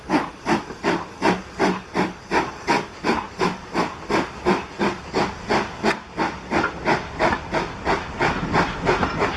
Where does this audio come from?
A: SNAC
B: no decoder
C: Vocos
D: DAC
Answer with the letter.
B